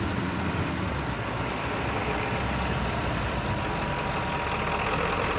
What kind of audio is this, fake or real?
real